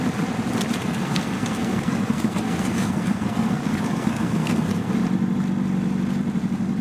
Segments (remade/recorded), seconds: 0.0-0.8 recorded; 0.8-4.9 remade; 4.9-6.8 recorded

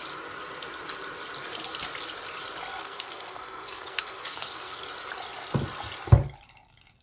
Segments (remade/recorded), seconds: 0.0-2.7 recorded; 2.7-4.8 remade; 4.8-7.0 recorded

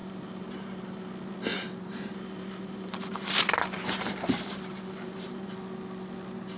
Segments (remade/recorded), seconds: 0.0-1.1 remade; 1.1-1.5 recorded; 1.5-5.5 remade; 5.5-6.6 recorded